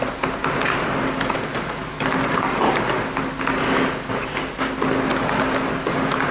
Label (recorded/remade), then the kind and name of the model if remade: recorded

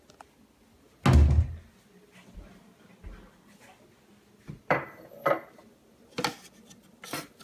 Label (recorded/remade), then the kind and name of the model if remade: recorded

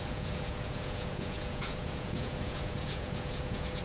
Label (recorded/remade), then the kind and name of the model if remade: remade, vocoder, Vocos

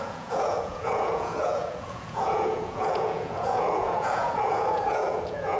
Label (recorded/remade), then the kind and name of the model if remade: remade, vocoder, Vocos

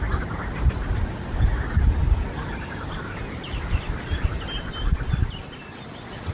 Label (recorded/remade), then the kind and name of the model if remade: recorded